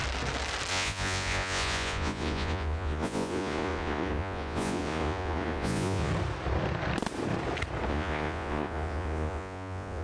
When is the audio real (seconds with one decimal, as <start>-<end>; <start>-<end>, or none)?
0.0-0.7; 6.1-7.9